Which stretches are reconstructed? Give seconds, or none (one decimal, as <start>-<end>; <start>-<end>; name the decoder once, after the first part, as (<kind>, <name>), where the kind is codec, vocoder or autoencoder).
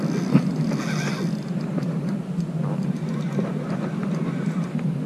none